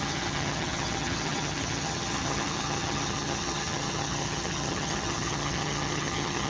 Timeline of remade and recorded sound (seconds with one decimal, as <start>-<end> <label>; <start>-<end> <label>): 0.0-6.5 remade